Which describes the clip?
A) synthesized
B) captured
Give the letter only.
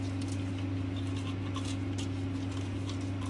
B